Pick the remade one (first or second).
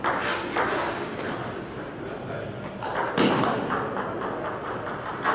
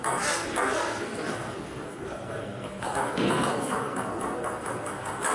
second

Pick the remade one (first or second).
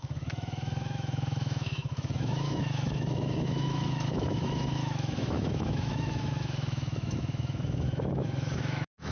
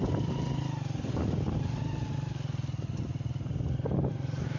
first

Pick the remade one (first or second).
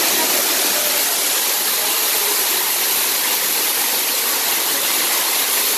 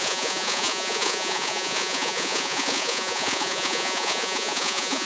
second